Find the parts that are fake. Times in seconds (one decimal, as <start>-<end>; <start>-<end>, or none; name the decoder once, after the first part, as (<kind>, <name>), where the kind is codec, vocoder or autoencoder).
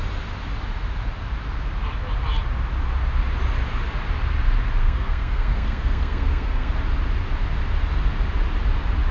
4.8-6.7 (codec, SNAC)